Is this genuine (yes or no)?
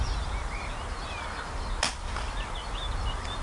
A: yes